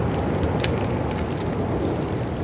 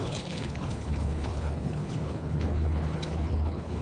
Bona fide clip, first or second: first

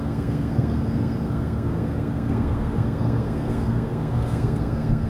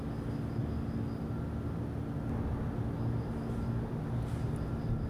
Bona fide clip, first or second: second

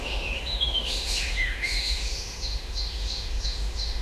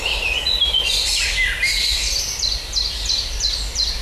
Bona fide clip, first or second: second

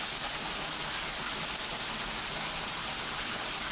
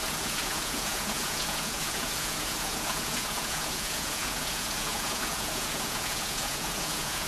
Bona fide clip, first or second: first